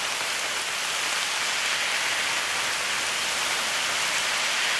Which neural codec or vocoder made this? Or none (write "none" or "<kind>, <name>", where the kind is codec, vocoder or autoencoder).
none